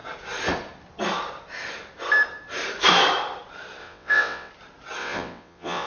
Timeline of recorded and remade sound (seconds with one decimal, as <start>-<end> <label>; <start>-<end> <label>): 0.0-3.8 recorded; 3.8-4.5 remade; 4.5-5.0 recorded; 5.0-5.9 remade